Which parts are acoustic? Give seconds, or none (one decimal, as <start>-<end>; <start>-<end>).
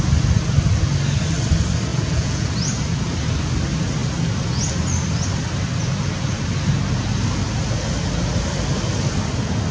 0.0-1.9; 2.5-9.7